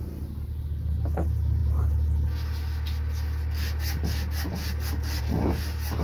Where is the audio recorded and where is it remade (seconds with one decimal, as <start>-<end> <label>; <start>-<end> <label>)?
0.0-6.0 recorded